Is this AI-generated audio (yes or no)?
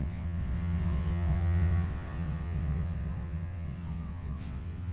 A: yes